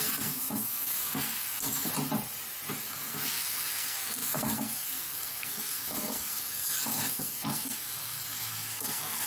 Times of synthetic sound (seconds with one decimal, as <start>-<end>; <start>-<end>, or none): 0.0-1.9; 2.8-9.3